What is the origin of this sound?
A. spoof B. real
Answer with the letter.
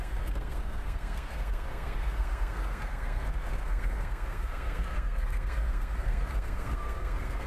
A